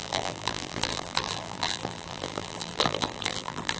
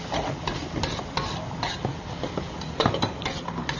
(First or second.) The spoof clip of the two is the first